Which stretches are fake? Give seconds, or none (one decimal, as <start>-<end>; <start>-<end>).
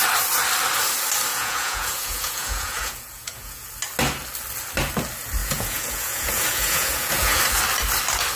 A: 1.3-3.7; 5.4-7.4